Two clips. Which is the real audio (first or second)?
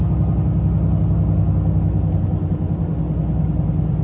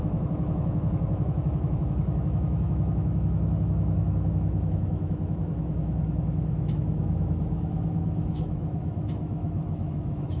first